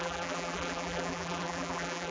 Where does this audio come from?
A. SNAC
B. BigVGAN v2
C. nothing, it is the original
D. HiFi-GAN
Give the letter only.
B